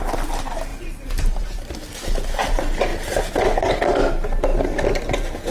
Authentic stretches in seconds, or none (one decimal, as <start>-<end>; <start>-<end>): 0.0-0.7; 1.6-4.5; 5.0-5.5